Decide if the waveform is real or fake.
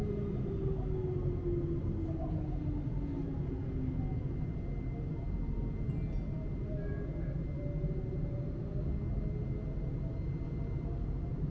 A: real